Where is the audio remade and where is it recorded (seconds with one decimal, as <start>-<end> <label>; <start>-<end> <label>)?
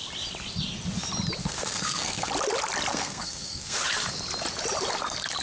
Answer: 0.0-1.4 recorded; 1.4-2.3 remade; 2.3-2.9 recorded; 2.9-3.8 remade; 3.8-5.4 recorded